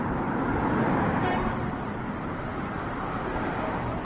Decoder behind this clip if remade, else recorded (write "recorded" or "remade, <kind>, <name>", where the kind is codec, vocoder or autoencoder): remade, vocoder, BigVGAN v2